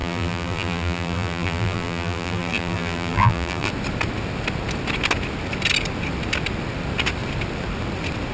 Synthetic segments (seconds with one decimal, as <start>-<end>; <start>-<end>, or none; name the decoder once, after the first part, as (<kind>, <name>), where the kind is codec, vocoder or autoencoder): 0.0-3.7 (vocoder, BigVGAN v2)